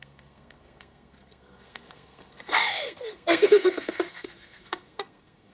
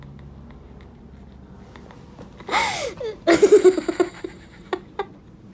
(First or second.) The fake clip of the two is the first